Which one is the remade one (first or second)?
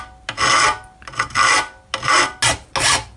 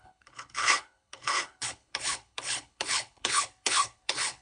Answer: second